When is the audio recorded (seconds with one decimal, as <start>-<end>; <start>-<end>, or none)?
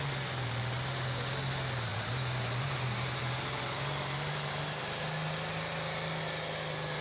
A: 0.0-1.9; 3.2-7.0